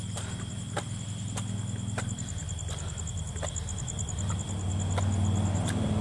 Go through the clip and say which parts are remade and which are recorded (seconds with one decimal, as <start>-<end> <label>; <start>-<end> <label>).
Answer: 0.0-6.0 recorded